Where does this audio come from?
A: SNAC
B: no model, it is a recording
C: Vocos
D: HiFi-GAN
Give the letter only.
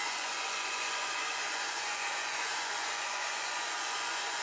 C